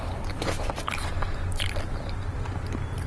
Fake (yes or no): no